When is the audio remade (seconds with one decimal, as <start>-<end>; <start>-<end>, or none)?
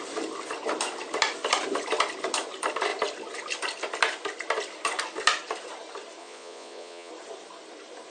6.2-7.1